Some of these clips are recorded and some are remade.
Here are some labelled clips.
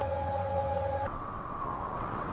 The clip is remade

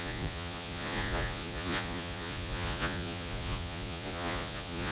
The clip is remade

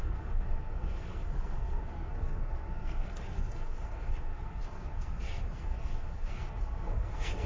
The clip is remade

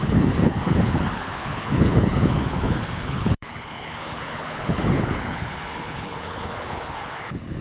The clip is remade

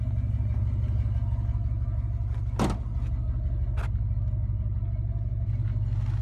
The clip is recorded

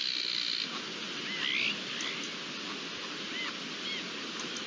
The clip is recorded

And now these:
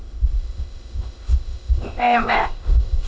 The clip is remade